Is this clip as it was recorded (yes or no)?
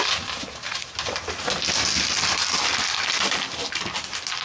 yes